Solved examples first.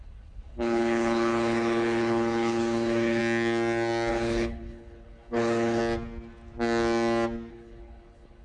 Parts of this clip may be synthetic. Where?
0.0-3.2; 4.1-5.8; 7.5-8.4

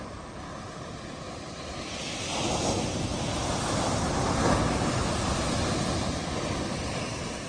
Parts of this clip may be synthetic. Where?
none

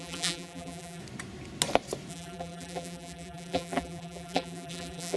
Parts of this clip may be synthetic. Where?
0.0-1.0; 2.1-5.2

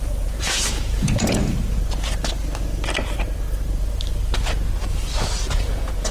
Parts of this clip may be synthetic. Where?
0.0-1.8; 5.5-6.1

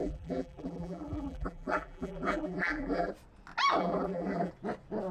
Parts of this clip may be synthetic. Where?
0.0-3.1; 3.8-4.5

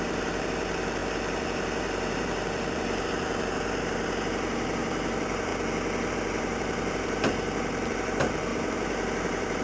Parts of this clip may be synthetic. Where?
0.0-5.5; 6.1-9.6

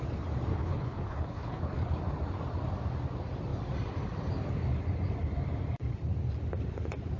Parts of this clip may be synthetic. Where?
0.5-2.0